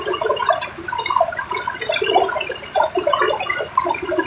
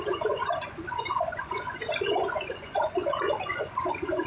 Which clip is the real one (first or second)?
first